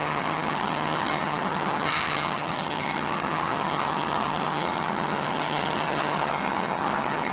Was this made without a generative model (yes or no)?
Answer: no